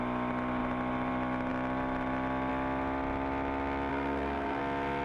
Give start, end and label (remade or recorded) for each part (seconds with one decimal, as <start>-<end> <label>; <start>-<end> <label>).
0.0-3.9 recorded; 3.9-4.6 remade; 4.6-5.0 recorded